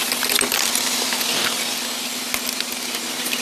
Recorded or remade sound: recorded